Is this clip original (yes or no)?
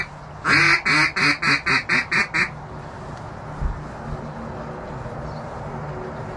yes